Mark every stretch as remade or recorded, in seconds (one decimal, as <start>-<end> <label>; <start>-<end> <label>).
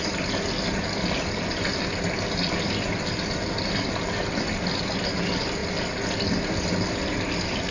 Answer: 0.0-7.7 recorded